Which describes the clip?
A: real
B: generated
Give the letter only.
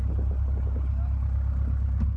A